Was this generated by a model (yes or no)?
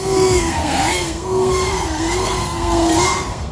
yes